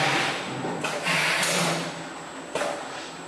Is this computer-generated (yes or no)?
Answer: no